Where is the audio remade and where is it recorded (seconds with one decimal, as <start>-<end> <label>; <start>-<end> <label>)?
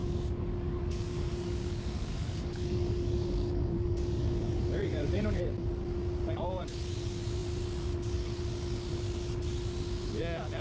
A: 0.0-4.6 remade; 4.6-10.6 recorded